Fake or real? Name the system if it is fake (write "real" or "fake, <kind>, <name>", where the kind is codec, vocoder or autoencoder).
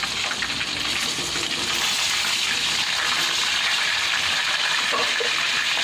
real